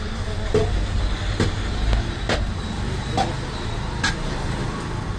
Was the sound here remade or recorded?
recorded